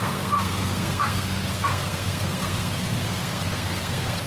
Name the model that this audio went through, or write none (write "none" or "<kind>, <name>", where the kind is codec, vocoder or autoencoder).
codec, SNAC